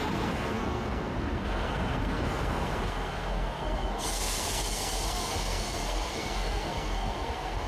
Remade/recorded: remade